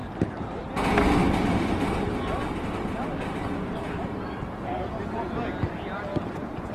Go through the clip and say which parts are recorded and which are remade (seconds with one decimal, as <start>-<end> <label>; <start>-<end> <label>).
0.0-0.7 remade; 0.7-1.2 recorded; 1.2-5.2 remade; 5.2-6.7 recorded